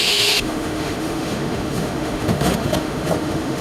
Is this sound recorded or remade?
remade